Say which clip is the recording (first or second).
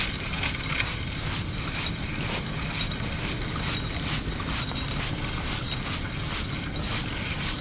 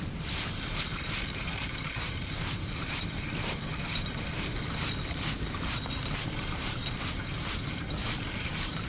first